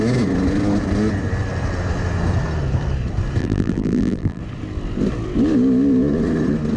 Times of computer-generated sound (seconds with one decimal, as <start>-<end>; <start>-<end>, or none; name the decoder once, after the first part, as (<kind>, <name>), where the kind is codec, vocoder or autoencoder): 3.4-4.4 (vocoder, BigVGAN v2)